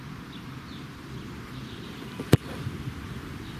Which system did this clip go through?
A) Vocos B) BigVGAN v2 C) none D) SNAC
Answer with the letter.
B